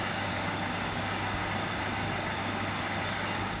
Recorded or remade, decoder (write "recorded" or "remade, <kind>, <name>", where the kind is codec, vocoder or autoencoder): remade, codec, DAC